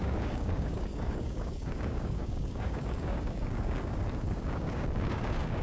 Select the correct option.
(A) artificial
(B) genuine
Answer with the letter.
A